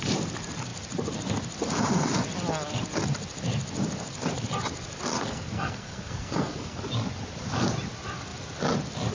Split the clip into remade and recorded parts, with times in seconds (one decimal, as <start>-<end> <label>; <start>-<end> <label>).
0.0-5.1 recorded; 5.1-6.8 remade; 6.8-9.1 recorded